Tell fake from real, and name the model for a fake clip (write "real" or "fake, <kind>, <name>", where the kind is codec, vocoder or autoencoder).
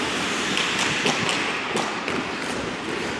real